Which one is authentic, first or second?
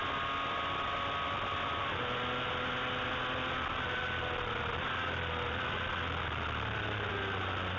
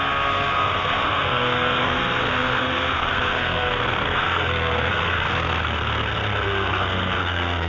first